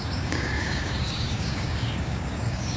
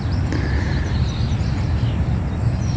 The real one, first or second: second